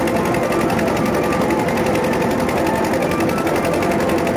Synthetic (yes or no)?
no